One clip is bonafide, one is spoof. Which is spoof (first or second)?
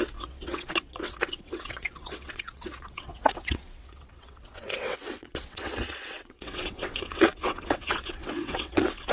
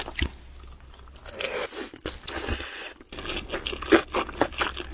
first